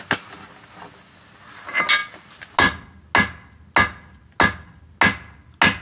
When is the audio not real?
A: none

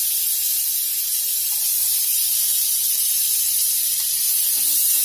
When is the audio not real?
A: none

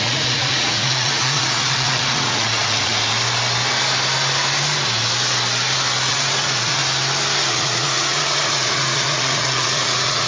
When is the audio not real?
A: 0.0-2.9 (vocoder, Vocos); 6.1-6.8; 7.5-10.3

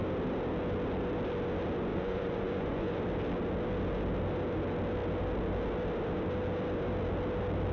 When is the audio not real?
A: 1.9-3.0 (vocoder, Vocos)

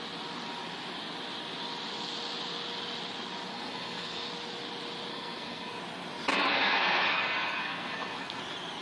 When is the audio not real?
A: 3.5-4.3 (codec, SNAC); 5.1-5.8; 6.3-8.4

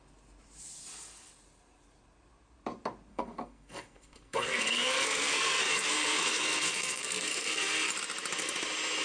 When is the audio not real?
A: 3.1-7.9 (codec, SNAC)

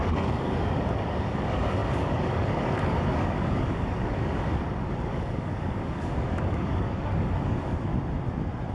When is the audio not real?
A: 0.0-7.9 (codec, DAC)

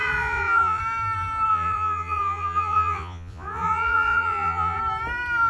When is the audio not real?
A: 0.0-0.8 (vocoder, Vocos); 1.5-4.8